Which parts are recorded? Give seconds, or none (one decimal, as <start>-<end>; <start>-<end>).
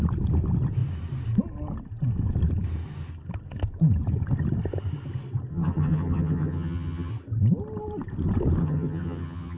0.0-5.5; 7.1-8.6